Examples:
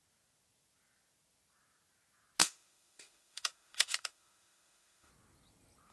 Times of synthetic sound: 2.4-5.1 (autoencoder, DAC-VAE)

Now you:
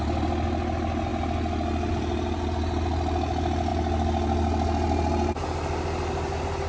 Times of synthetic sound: none